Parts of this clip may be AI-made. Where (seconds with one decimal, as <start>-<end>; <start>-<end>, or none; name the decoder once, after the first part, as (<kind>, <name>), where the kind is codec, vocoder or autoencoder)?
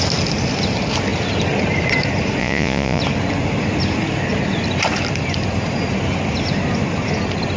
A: 2.4-3.0 (vocoder, Vocos)